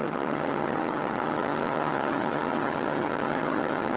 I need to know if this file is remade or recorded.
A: remade